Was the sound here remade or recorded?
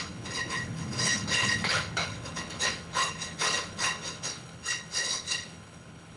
remade